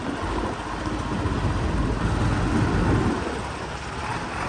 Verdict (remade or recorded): recorded